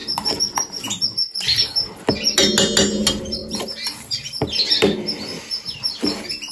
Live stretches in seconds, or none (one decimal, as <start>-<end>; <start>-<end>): 0.0-6.5